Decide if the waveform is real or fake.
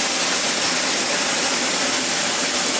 fake